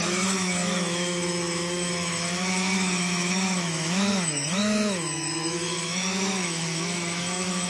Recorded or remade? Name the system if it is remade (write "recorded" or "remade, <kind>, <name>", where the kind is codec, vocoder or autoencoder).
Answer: remade, autoencoder, DAC-VAE